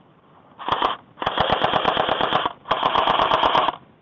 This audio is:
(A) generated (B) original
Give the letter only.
A